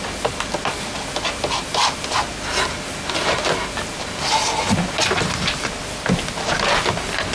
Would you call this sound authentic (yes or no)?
yes